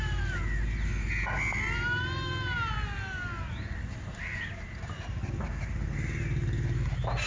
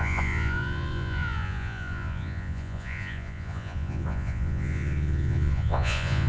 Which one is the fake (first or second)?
second